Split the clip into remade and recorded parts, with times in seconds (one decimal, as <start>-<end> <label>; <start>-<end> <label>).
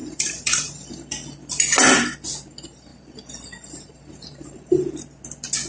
0.0-0.9 remade; 0.9-2.9 recorded; 2.9-5.2 remade; 5.2-5.7 recorded